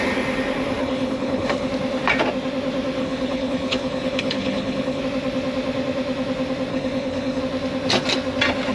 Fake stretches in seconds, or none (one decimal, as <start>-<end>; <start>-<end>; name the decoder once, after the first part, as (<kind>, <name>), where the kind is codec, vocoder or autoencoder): 0.8-1.7 (codec, HILCodec); 3.0-5.0; 6.7-7.4